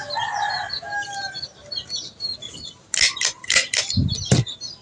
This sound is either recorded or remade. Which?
recorded